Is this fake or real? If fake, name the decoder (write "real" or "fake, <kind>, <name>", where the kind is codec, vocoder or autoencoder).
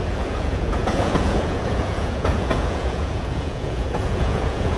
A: fake, vocoder, Vocos